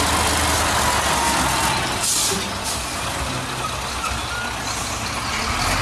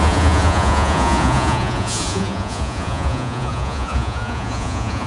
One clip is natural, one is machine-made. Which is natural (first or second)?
first